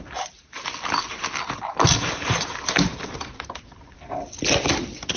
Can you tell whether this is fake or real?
real